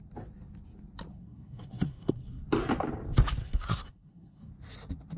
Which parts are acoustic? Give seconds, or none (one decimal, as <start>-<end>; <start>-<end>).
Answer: 0.0-1.1; 2.4-3.4; 4.5-5.2